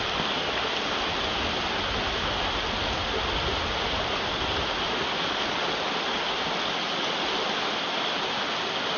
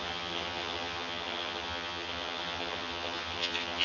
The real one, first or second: first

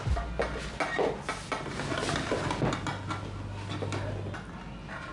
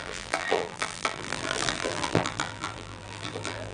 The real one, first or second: first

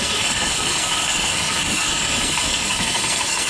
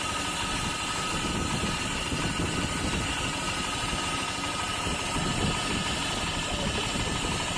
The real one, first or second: second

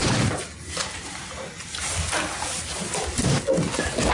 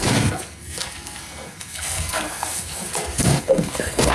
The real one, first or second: first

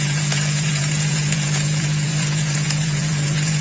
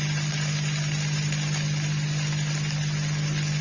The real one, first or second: second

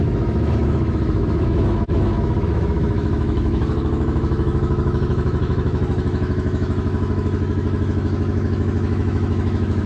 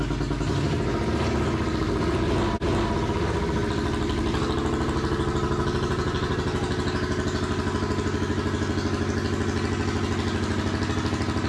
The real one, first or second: second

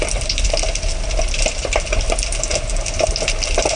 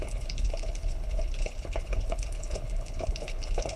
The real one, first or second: first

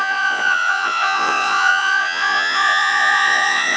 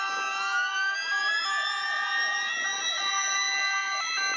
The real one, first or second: second